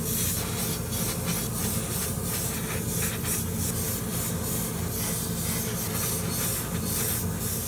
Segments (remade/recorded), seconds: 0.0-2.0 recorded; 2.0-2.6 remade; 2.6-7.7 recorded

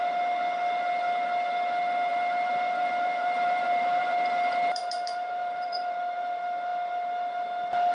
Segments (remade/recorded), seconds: 0.0-2.1 recorded; 2.1-6.0 remade; 6.0-7.9 recorded